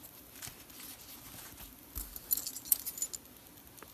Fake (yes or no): no